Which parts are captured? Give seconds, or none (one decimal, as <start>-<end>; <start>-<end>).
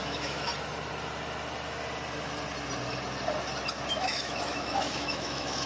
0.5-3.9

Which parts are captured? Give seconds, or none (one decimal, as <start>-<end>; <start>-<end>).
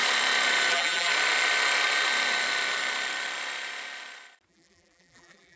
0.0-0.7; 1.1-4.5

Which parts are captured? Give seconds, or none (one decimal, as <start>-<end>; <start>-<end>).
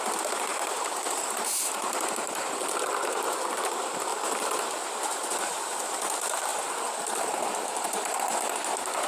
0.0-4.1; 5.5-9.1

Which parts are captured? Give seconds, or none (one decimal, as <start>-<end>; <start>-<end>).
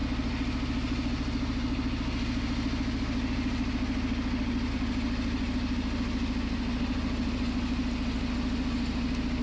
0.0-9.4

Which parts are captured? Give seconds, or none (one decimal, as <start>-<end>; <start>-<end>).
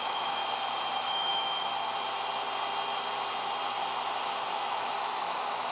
0.4-1.1; 1.7-4.2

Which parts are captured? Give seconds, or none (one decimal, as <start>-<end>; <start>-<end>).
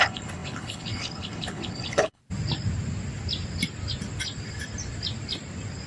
2.2-5.9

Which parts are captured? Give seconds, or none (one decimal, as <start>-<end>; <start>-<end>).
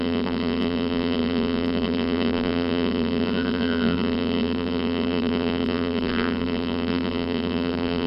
none